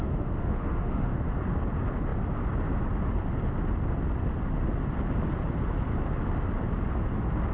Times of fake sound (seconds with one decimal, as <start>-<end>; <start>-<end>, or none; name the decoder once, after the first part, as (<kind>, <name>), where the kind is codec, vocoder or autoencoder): 0.0-1.2 (autoencoder, DAC-VAE)